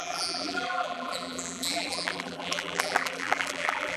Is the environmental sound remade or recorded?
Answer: remade